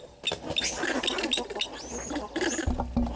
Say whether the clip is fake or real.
real